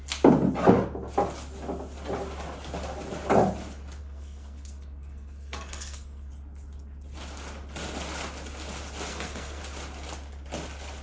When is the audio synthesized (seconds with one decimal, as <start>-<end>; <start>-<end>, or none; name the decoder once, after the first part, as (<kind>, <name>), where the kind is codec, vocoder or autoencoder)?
4.0-6.3 (codec, SNAC); 9.1-9.6